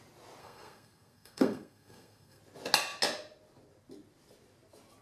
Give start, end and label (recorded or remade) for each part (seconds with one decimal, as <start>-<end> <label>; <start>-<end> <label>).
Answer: 0.0-0.4 recorded; 0.4-2.4 remade; 2.4-5.0 recorded